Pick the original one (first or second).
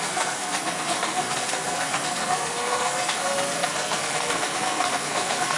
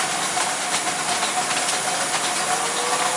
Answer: second